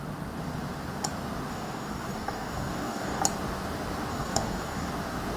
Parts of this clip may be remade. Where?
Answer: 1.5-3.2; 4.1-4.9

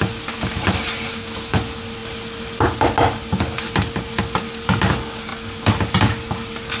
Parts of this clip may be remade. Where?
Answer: 1.1-1.6

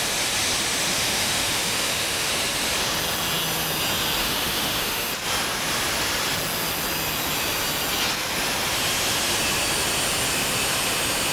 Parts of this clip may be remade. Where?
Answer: 0.9-2.3; 4.2-5.1

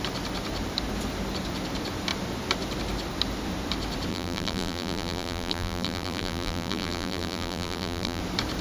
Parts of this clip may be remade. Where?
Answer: 4.1-8.2

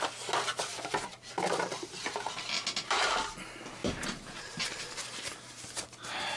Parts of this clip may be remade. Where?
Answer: 0.7-1.9; 3.8-4.5

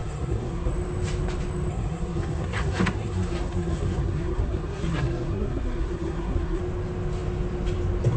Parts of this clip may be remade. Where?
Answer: 0.0-0.7; 1.7-6.6